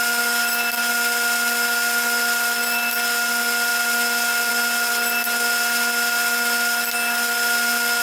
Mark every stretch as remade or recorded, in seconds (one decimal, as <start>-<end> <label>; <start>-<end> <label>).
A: 0.0-8.0 recorded